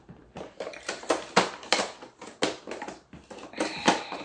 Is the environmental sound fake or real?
fake